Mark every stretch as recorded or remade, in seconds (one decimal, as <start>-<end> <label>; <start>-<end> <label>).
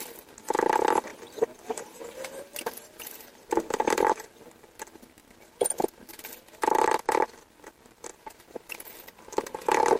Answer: 0.0-1.1 recorded; 1.1-4.4 remade; 4.4-8.1 recorded; 8.1-9.5 remade; 9.5-10.0 recorded